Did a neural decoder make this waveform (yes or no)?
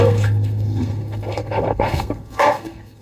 yes